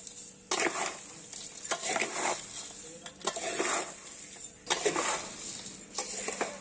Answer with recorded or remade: recorded